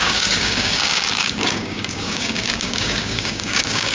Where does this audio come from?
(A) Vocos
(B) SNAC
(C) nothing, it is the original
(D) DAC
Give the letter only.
D